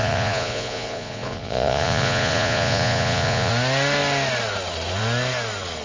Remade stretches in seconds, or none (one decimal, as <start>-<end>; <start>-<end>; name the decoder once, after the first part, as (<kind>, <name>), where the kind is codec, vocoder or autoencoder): 0.0-3.5 (vocoder, Vocos)